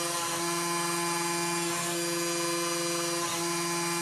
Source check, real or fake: real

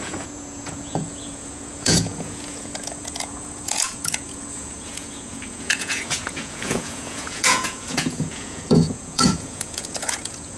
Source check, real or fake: fake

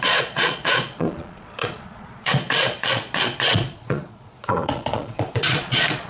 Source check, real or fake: fake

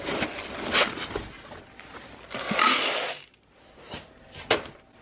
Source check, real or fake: real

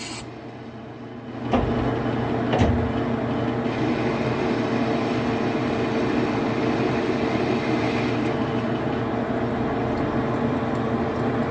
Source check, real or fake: real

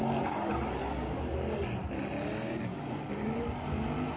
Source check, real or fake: real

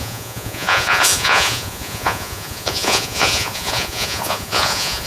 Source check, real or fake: fake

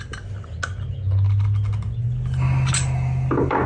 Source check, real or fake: real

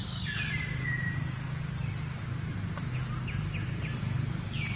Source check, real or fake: real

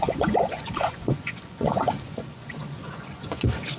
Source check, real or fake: fake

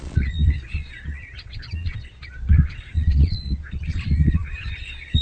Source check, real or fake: fake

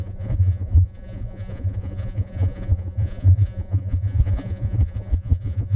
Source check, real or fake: fake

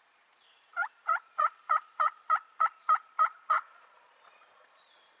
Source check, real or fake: fake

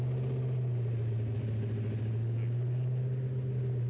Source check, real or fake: real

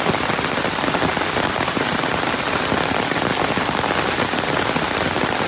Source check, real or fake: real